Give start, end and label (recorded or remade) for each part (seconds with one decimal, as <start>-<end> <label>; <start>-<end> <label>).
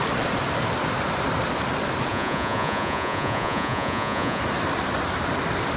0.0-2.1 recorded; 2.1-4.4 remade; 4.4-5.8 recorded